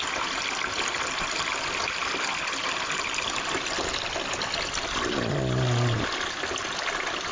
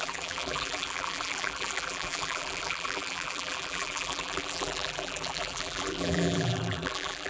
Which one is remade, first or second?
second